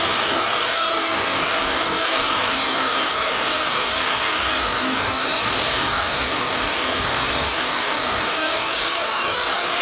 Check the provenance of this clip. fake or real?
fake